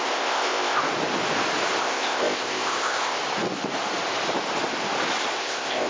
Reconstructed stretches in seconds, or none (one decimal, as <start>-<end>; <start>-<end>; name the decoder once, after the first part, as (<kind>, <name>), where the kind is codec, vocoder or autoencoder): 0.0-0.8 (codec, ZipCodec); 1.8-3.2; 5.4-5.9